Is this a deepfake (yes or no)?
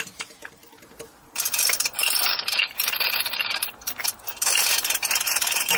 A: yes